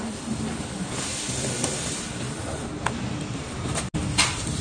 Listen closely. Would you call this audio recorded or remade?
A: recorded